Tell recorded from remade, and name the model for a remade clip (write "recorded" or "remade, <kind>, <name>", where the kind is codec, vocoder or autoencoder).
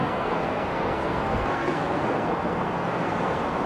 remade, codec, SNAC